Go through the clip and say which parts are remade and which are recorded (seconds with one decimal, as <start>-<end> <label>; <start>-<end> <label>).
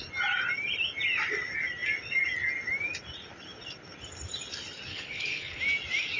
0.0-4.9 recorded; 4.9-5.6 remade; 5.6-6.2 recorded